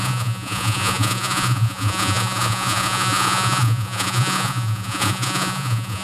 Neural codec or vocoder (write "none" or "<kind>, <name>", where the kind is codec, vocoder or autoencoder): vocoder, Vocos